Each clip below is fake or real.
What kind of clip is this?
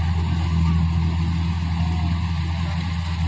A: real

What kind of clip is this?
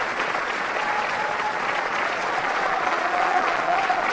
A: fake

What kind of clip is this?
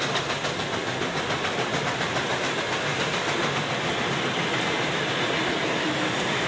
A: real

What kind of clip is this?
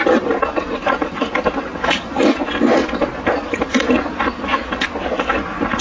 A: real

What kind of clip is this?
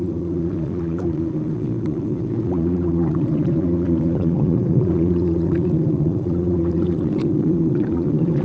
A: fake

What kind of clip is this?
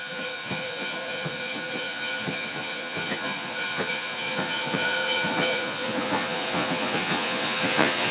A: fake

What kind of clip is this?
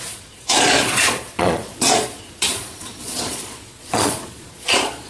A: fake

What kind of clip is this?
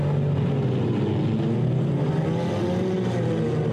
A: real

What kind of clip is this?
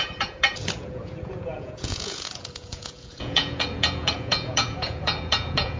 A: fake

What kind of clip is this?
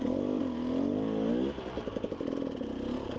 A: real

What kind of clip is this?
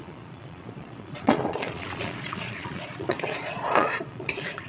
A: fake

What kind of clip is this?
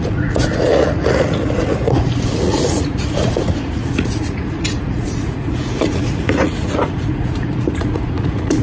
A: fake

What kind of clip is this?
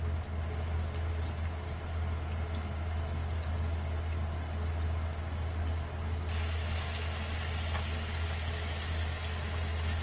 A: real